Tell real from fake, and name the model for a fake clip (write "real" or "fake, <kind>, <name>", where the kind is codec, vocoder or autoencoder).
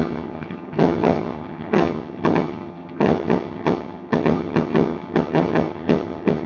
fake, vocoder, HiFi-GAN